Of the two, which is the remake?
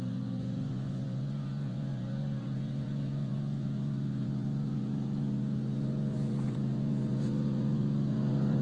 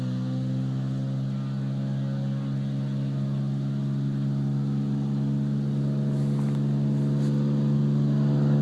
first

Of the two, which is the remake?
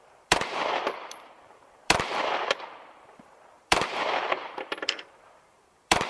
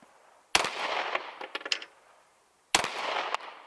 first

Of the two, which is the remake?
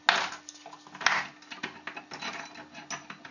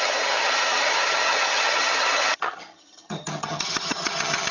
second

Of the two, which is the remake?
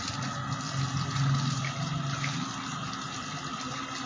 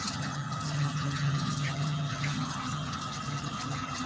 second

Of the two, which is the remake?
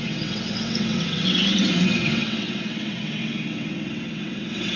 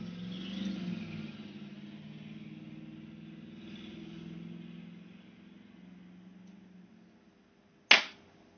first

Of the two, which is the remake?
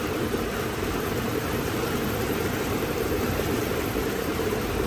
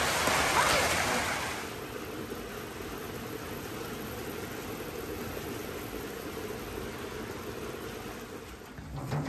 first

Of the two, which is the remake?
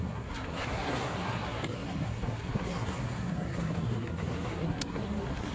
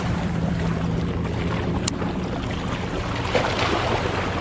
first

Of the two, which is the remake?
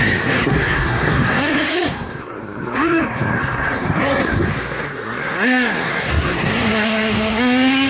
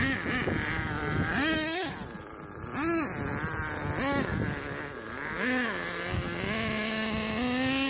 first